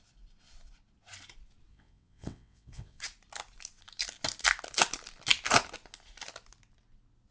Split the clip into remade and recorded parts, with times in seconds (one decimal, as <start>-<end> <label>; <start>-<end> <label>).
0.0-1.7 recorded; 1.7-3.0 remade; 3.0-7.3 recorded